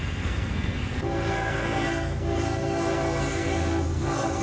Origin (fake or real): fake